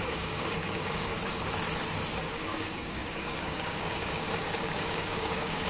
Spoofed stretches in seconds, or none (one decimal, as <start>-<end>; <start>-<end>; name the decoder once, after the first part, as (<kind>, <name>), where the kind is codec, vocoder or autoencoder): 0.0-1.1 (codec, DAC); 2.3-5.7